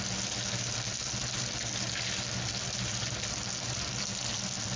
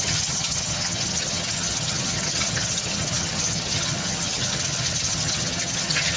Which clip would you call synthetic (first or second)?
second